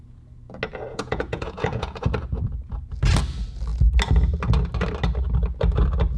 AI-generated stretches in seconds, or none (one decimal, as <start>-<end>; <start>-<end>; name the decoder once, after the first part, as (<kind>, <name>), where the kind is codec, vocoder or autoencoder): 0.9-2.1 (vocoder, Vocos)

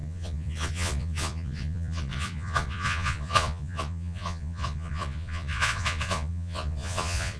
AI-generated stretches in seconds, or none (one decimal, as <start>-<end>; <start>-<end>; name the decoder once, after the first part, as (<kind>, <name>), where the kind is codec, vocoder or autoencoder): 0.0-7.4 (vocoder, Vocos)

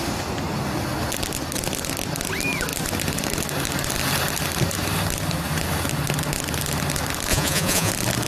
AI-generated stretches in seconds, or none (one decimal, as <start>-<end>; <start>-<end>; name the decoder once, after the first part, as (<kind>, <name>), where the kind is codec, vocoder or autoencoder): 7.3-7.9 (vocoder, Vocos)